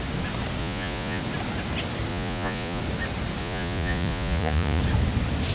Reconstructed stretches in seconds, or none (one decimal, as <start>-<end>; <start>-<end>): 0.6-1.2; 2.1-2.8; 3.4-4.8